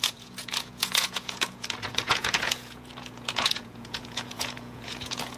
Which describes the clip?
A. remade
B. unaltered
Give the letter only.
A